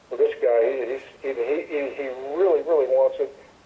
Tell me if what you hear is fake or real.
real